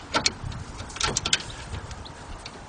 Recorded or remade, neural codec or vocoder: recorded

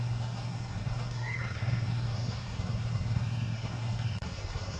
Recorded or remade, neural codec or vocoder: remade, codec, SNAC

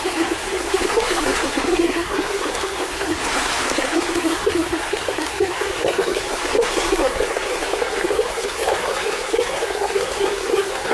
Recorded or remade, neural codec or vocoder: remade, codec, SNAC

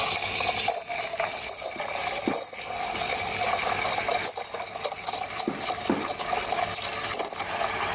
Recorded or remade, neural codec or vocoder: recorded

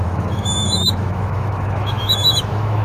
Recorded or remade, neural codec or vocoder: remade, autoencoder, DAC-VAE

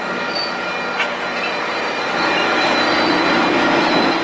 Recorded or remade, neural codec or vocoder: recorded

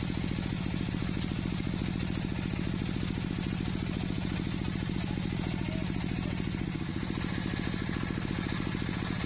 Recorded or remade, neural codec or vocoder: recorded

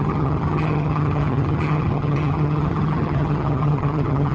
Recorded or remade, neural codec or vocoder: remade, vocoder, HiFi-GAN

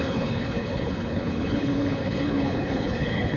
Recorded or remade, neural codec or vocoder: remade, codec, HILCodec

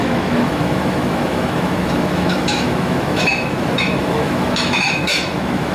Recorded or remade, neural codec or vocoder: remade, autoencoder, DAC-VAE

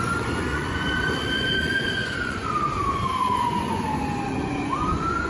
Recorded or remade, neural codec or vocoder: remade, vocoder, Vocos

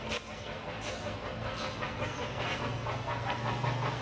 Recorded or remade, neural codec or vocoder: remade, codec, SNAC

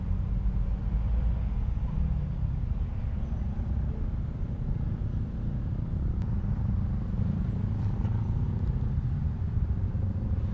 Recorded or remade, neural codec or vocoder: recorded